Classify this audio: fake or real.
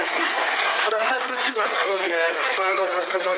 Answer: fake